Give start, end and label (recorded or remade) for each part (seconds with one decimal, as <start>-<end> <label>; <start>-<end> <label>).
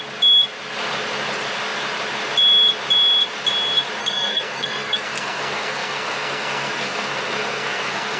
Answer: 0.0-4.0 recorded; 4.0-8.2 remade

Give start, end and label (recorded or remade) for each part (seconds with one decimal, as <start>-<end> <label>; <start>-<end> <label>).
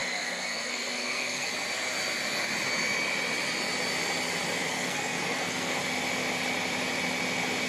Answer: 0.0-1.5 remade; 1.5-4.7 recorded; 4.7-5.8 remade; 5.8-7.7 recorded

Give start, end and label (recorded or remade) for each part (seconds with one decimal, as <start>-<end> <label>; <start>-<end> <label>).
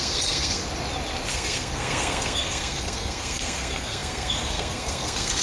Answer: 0.0-0.6 remade; 0.6-1.3 recorded; 1.3-5.4 remade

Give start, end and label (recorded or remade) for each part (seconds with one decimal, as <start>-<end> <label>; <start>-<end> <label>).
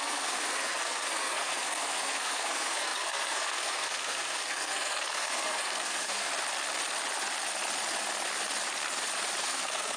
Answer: 0.0-6.3 remade; 6.3-9.4 recorded; 9.4-10.0 remade